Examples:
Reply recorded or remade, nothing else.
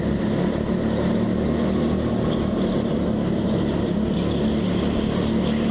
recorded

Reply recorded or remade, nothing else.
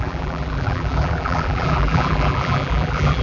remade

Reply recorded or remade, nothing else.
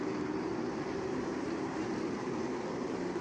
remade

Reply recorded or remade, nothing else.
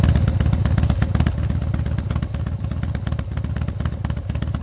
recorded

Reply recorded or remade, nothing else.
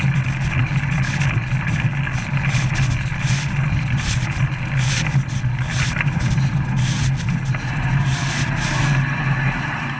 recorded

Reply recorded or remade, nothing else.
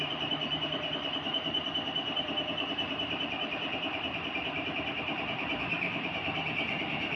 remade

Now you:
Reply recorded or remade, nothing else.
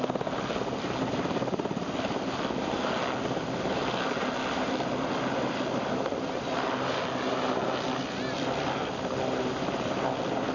recorded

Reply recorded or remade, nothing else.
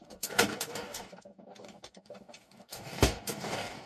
remade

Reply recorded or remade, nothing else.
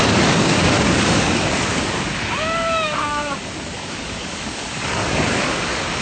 remade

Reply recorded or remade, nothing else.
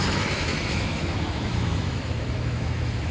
remade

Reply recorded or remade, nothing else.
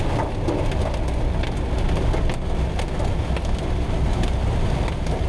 recorded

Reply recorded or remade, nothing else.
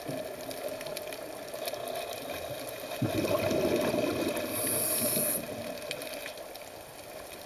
recorded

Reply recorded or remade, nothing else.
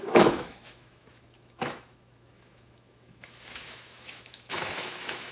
remade